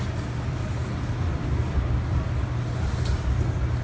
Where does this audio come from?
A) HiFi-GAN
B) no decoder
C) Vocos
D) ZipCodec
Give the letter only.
B